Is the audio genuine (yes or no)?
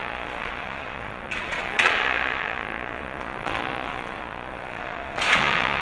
no